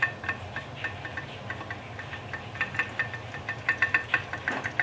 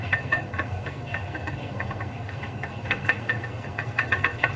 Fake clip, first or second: second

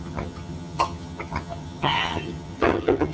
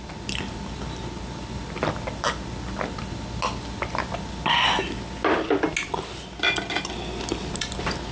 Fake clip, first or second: first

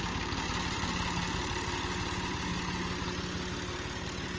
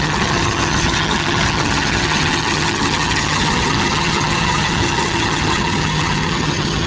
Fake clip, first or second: second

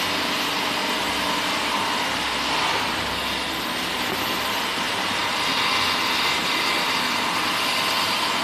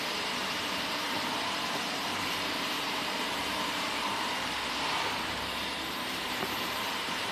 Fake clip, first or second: second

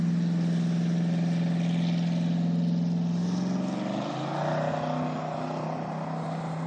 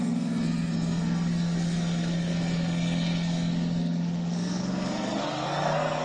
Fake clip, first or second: second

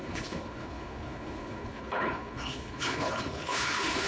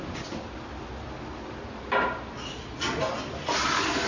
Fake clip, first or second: first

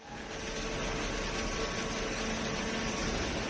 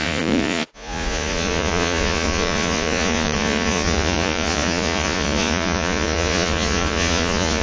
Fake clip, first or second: second